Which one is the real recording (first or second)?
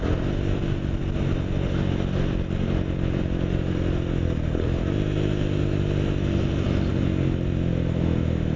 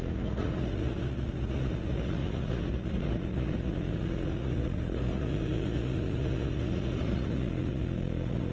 first